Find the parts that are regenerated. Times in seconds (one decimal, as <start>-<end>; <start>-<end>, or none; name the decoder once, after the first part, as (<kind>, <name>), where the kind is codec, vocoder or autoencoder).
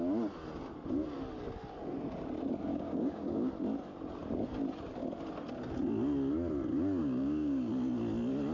2.7-3.5 (codec, DAC); 7.0-7.7